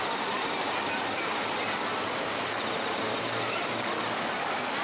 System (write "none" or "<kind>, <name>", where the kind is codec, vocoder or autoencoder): none